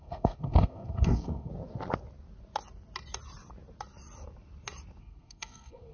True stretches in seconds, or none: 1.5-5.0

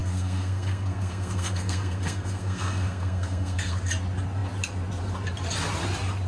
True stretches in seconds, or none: 3.8-6.3

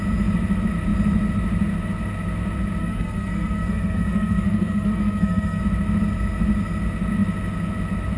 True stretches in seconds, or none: 0.0-2.8; 5.6-8.2

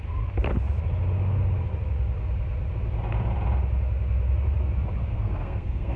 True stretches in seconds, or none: 0.0-5.0

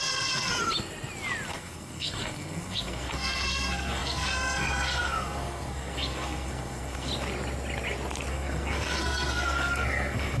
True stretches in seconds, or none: 0.5-1.5; 7.1-8.3

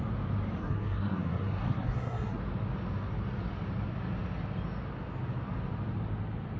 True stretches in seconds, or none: 0.0-0.6; 2.4-6.6

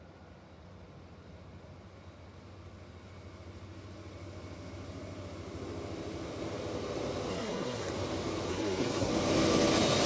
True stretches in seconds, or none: 0.0-7.3; 7.9-8.5; 9.1-10.1